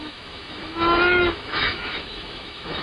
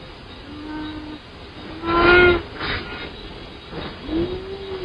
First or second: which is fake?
first